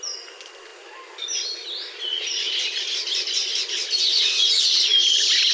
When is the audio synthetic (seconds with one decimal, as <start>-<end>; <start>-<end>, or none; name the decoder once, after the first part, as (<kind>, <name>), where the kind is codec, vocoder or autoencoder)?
none